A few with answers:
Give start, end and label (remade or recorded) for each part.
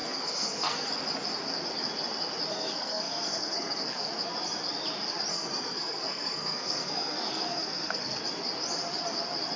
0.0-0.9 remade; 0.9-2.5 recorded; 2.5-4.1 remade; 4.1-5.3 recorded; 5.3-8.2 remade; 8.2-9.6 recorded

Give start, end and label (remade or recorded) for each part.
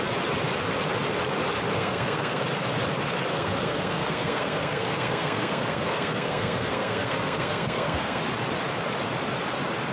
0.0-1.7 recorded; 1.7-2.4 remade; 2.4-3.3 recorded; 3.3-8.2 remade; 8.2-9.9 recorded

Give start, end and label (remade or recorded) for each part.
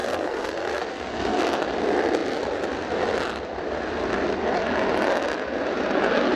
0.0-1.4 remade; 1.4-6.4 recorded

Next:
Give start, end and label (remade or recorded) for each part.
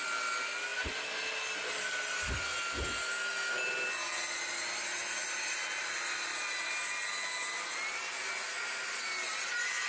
0.0-9.9 recorded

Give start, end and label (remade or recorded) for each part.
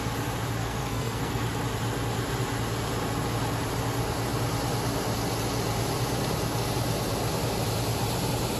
0.0-0.6 recorded; 0.6-1.5 remade; 1.5-8.6 recorded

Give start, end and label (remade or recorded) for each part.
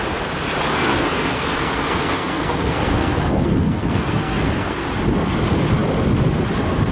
0.0-0.7 recorded; 0.7-4.8 remade; 4.8-6.9 recorded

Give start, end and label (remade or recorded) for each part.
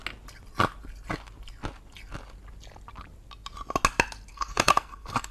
0.0-4.3 recorded; 4.3-5.3 remade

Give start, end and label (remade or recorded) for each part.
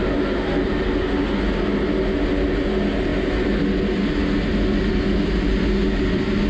0.0-6.5 recorded